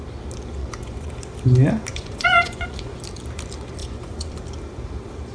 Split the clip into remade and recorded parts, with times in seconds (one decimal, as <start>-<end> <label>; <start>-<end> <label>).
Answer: 0.0-0.6 recorded; 0.6-1.1 remade; 1.1-1.9 recorded; 1.9-3.0 remade; 3.0-3.8 recorded; 3.8-4.4 remade; 4.4-5.3 recorded